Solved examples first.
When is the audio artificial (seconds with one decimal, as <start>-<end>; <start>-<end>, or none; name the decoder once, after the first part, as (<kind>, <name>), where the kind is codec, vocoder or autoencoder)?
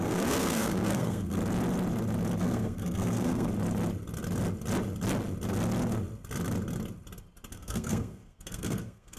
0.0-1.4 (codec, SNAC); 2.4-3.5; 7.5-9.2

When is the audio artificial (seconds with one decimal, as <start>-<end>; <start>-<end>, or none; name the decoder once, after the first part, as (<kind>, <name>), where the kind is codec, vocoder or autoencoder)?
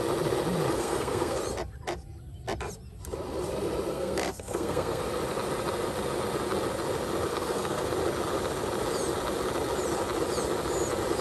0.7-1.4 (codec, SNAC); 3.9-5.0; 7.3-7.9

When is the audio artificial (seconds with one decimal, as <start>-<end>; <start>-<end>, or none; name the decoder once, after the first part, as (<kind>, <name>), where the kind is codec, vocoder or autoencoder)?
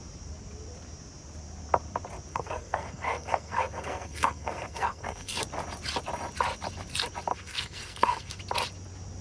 2.3-5.4 (codec, SNAC); 7.3-8.4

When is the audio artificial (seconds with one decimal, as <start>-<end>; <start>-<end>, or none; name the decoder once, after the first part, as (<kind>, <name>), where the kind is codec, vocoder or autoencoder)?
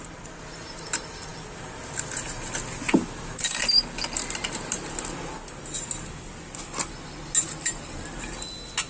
none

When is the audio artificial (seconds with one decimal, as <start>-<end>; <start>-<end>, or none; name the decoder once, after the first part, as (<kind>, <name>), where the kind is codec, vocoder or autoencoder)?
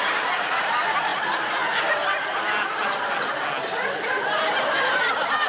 none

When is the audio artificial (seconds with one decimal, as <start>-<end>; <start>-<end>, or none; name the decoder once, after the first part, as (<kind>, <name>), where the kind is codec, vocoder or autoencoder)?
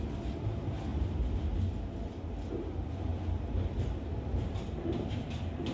none